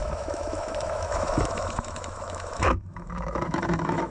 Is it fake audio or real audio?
fake